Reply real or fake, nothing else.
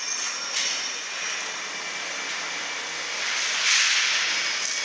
real